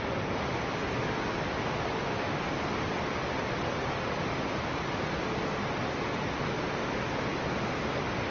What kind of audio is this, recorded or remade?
recorded